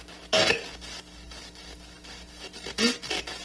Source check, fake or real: real